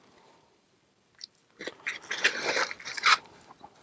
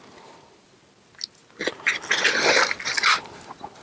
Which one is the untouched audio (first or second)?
second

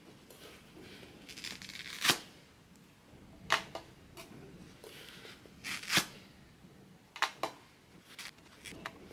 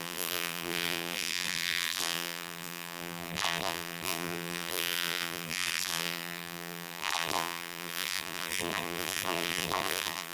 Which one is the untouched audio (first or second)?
first